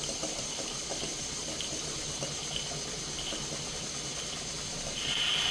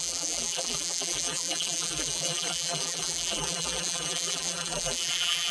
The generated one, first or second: second